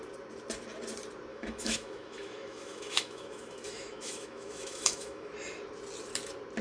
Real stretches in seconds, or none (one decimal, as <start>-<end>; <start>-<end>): 0.0-1.3; 5.3-6.6